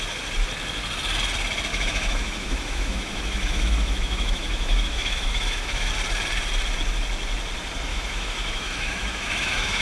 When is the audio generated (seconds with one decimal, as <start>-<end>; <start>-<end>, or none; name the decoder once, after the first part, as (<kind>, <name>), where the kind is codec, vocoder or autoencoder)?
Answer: 1.7-5.9 (autoencoder, DAC-VAE); 7.9-9.8